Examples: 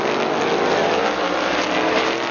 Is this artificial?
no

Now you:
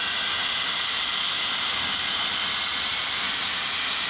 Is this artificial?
no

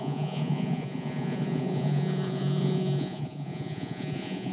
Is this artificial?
yes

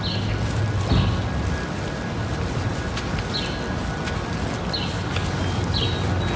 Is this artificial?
no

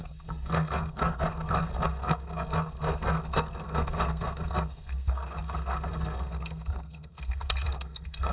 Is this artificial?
yes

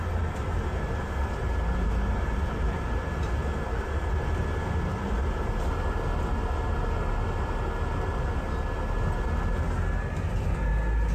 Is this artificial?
no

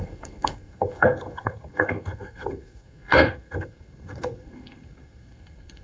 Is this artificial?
yes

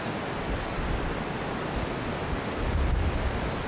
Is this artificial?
no